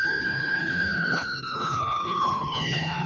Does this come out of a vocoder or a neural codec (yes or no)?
yes